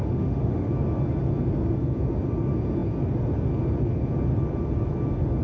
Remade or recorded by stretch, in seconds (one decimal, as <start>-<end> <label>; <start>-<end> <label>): 0.0-0.7 remade; 0.7-5.4 recorded